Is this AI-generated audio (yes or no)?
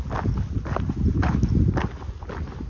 no